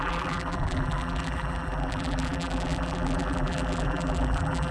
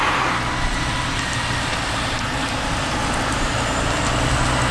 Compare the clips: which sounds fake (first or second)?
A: first